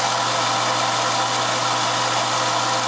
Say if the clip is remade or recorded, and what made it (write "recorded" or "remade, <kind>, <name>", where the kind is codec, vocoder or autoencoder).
recorded